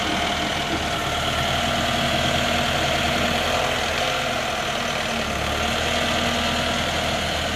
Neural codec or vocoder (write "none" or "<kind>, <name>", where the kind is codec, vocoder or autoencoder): none